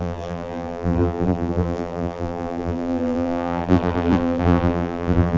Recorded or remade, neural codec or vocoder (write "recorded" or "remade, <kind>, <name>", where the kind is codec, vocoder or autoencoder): remade, vocoder, BigVGAN v2